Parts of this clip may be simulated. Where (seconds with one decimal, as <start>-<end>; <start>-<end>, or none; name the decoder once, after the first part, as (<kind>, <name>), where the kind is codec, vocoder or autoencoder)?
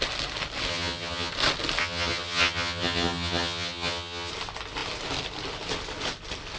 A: 0.7-1.3 (vocoder, HiFi-GAN); 1.8-4.3